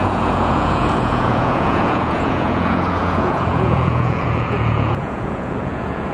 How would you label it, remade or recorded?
remade